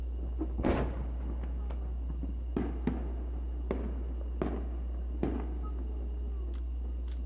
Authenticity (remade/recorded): recorded